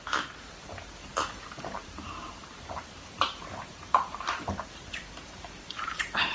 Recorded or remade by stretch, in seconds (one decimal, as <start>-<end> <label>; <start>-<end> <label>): 0.0-6.3 remade